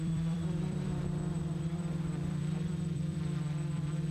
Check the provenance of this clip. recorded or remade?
remade